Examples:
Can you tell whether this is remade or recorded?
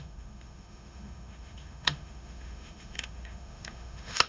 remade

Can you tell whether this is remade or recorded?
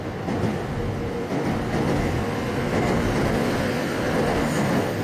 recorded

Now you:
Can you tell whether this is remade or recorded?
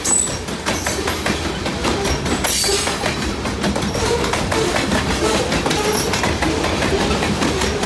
recorded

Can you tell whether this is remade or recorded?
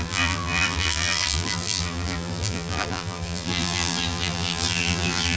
remade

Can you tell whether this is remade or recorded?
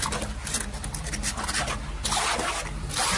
recorded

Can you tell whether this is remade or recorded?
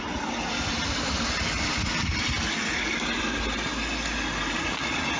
recorded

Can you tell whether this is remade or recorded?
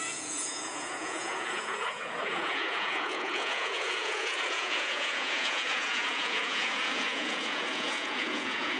remade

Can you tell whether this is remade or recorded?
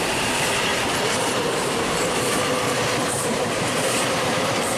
remade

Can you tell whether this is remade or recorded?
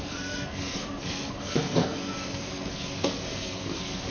remade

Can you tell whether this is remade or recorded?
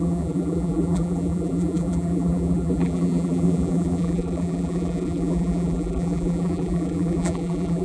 remade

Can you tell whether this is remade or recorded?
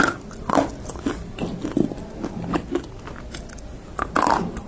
recorded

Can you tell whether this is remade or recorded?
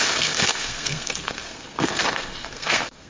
remade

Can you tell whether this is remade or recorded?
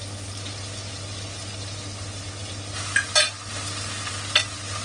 recorded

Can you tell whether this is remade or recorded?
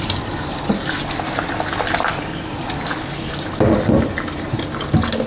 recorded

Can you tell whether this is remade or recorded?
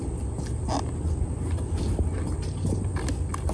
recorded